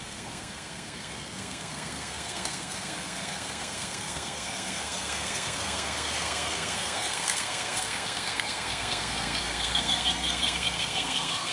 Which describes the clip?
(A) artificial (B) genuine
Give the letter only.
A